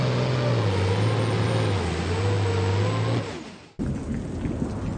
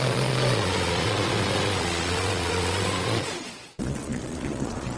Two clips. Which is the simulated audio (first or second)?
second